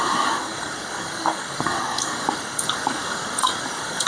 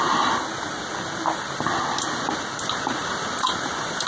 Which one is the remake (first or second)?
first